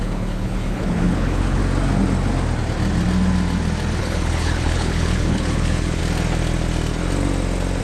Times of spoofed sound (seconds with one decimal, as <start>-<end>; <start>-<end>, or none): 0.0-1.6; 4.0-6.0